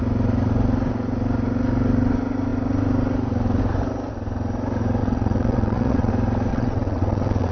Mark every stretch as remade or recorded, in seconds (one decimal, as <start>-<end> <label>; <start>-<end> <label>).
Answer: 0.0-5.0 recorded; 5.0-6.1 remade; 6.1-6.5 recorded; 6.5-7.5 remade